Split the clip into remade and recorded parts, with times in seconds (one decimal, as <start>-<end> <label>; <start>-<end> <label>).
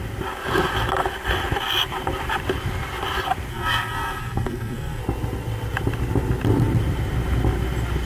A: 0.0-3.5 recorded; 3.5-5.0 remade; 5.0-8.1 recorded